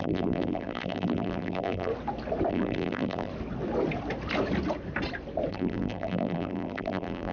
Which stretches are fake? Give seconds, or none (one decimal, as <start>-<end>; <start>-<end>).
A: 0.0-1.9; 2.5-3.3; 5.5-7.3